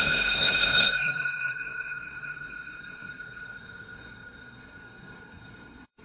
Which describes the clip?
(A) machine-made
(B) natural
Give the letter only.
A